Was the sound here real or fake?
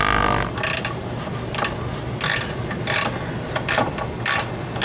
real